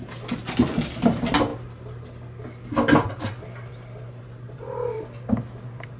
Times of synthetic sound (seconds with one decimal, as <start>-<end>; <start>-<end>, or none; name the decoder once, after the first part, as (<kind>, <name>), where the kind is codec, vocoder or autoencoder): none